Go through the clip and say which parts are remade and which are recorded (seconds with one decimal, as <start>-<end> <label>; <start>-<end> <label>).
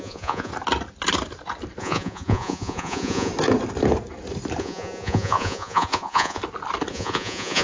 0.0-0.5 remade; 0.5-1.8 recorded; 1.8-3.3 remade; 3.3-4.6 recorded; 4.6-6.4 remade; 6.4-6.9 recorded; 6.9-7.6 remade